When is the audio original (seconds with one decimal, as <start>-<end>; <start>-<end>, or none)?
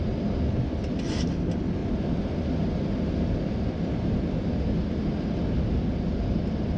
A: 0.0-6.8